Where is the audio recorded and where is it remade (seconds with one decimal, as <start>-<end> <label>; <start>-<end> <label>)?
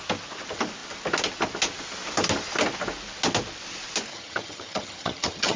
0.0-4.1 recorded; 4.1-5.6 remade